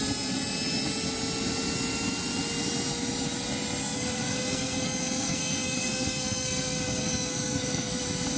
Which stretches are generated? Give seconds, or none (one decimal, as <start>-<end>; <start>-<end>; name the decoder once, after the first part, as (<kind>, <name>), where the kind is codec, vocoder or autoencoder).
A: 3.8-8.0 (codec, SNAC)